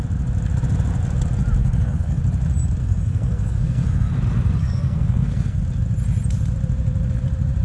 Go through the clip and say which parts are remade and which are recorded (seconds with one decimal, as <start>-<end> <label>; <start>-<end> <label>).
0.0-1.6 recorded; 1.6-2.2 remade; 2.2-2.8 recorded; 2.8-4.1 remade; 4.1-4.6 recorded; 4.6-5.6 remade; 5.6-7.6 recorded